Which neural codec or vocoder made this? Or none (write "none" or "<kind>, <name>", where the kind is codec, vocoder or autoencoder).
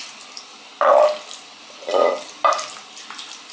none